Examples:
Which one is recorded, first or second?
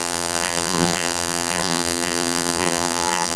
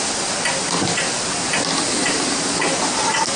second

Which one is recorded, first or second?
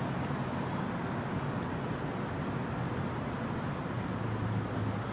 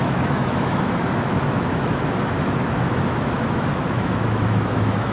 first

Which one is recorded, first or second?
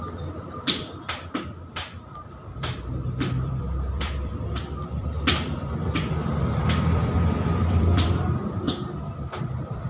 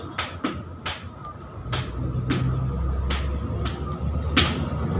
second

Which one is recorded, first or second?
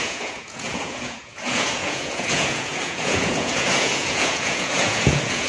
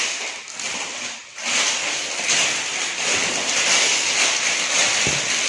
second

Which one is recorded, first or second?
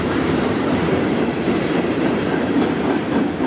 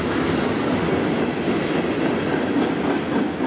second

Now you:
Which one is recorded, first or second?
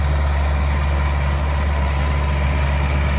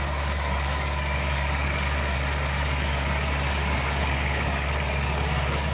first